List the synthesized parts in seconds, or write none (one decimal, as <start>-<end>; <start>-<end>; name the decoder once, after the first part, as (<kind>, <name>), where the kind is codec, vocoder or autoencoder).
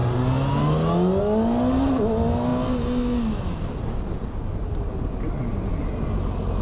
none